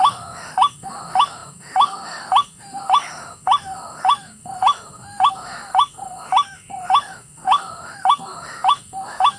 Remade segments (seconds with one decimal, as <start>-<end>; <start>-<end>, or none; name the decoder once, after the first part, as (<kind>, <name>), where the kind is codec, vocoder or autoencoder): 0.0-9.4 (autoencoder, DAC-VAE)